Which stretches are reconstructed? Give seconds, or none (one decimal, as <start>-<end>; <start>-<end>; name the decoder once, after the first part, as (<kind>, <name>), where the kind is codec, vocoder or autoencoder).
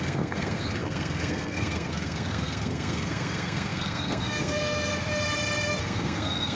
0.0-4.9 (codec, SNAC); 5.8-6.6